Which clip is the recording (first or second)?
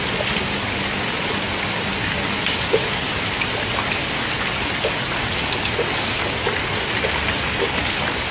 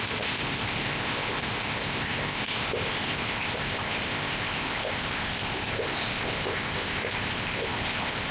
first